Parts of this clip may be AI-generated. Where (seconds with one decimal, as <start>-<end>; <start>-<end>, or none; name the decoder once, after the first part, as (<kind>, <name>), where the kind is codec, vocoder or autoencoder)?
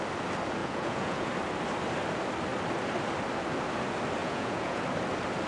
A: 0.6-1.3 (vocoder, Vocos); 4.2-4.8